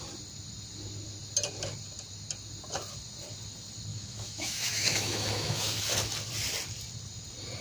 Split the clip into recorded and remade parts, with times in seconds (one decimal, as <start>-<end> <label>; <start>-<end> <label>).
0.0-3.9 recorded; 3.9-5.8 remade; 5.8-7.6 recorded